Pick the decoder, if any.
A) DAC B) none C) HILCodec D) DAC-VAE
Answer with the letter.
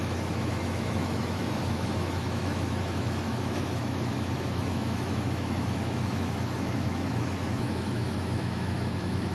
D